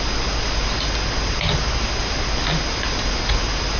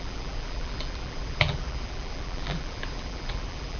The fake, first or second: second